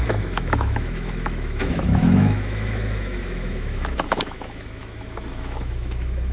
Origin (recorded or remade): remade